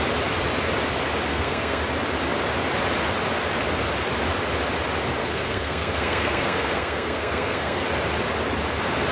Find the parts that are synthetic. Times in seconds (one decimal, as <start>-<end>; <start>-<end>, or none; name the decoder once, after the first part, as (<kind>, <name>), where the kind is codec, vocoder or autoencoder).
1.3-1.8 (codec, SNAC); 5.2-7.8